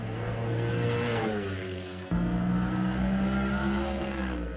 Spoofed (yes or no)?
yes